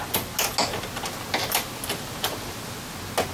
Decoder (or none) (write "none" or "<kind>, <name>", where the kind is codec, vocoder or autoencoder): none